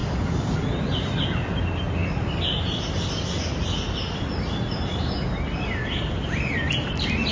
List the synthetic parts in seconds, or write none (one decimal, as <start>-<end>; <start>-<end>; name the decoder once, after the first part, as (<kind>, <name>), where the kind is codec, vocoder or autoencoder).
none